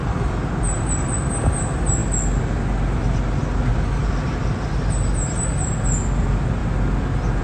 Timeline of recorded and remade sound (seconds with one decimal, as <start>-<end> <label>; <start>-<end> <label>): 0.0-7.4 recorded